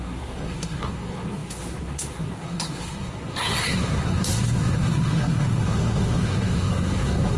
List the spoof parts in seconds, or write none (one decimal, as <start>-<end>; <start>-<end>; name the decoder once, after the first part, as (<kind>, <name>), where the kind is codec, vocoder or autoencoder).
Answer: 0.0-7.4 (codec, SNAC)